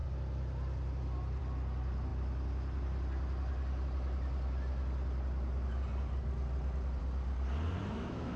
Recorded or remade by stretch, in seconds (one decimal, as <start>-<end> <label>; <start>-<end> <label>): 0.0-7.8 recorded; 7.8-8.4 remade